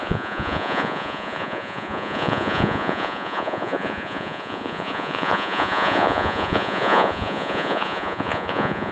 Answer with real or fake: fake